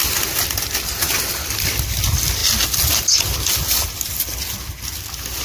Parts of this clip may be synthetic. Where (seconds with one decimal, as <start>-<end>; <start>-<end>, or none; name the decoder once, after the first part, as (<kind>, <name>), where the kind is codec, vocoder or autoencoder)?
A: none